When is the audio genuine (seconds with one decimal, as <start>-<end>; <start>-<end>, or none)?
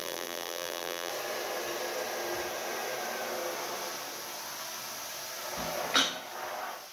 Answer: 1.1-6.9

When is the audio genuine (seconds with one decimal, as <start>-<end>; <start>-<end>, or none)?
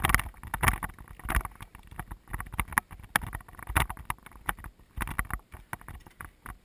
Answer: 0.0-6.6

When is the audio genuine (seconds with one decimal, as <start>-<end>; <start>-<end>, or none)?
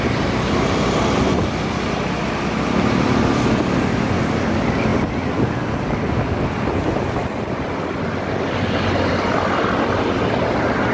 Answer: 0.0-10.9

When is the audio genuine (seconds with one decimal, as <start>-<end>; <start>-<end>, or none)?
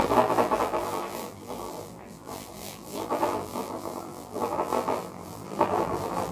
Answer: none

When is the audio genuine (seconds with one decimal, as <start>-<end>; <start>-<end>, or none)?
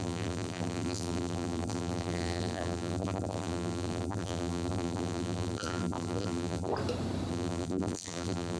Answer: 6.7-7.3